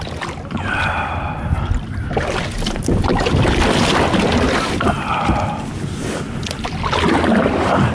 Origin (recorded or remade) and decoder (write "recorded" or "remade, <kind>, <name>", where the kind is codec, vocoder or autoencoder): recorded